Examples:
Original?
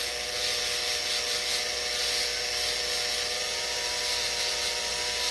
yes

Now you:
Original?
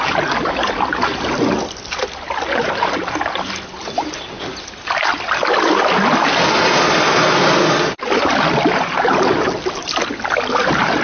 yes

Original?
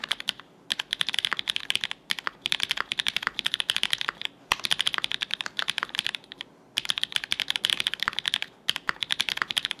yes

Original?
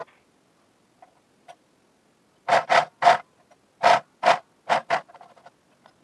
yes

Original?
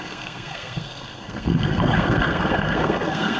no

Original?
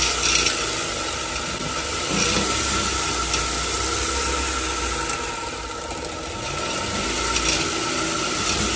yes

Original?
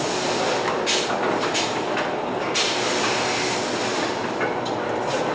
yes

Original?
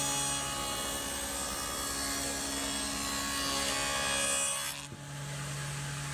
yes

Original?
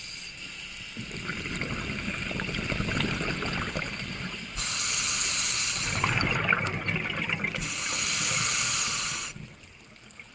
yes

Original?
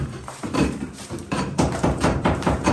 no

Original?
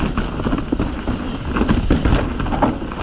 yes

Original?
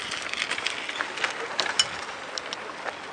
yes